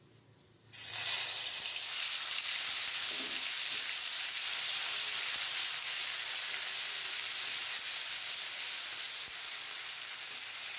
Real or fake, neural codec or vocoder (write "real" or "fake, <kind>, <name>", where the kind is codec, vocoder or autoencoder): real